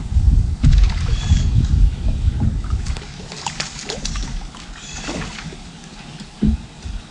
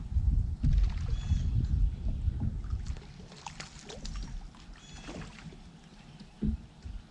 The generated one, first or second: first